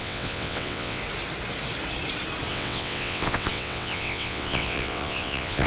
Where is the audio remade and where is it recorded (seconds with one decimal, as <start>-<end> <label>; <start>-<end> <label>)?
0.0-1.0 remade; 1.0-2.5 recorded; 2.5-5.7 remade